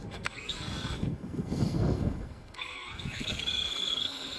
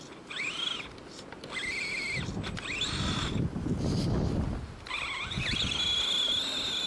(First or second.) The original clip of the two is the second